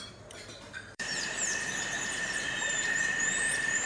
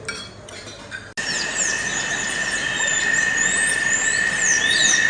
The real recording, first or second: second